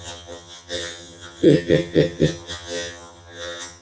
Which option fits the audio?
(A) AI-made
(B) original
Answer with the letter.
A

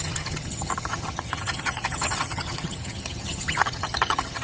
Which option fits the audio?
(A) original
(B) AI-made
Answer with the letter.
B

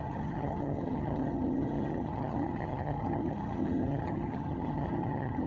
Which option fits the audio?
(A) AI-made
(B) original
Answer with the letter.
A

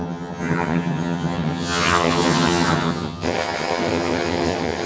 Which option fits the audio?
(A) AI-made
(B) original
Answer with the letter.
A